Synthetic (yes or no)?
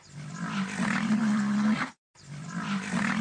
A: yes